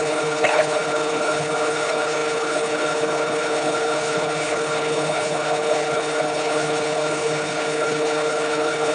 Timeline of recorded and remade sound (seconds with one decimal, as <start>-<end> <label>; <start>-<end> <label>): 0.0-8.9 remade

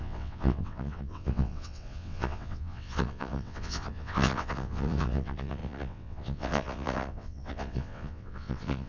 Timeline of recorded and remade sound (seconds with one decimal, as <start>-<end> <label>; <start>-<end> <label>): 0.0-8.9 remade

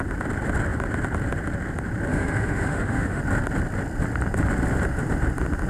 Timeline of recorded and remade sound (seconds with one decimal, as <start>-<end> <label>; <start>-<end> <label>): 0.0-2.1 recorded; 2.1-3.2 remade; 3.2-5.7 recorded

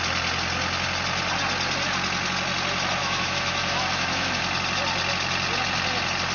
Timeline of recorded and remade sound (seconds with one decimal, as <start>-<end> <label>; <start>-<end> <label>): 0.0-3.0 recorded; 3.0-4.4 remade; 4.4-6.3 recorded

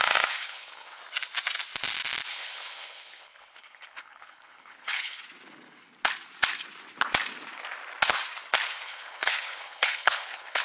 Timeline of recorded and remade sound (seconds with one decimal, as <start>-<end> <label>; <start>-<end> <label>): 0.0-0.4 recorded; 0.4-1.0 remade; 1.0-2.3 recorded; 2.3-5.2 remade; 5.2-8.7 recorded; 8.7-10.6 remade

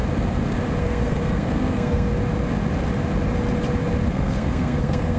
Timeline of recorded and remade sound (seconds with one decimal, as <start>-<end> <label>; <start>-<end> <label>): 0.0-0.8 recorded; 0.8-2.1 remade; 2.1-4.1 recorded; 4.1-5.2 remade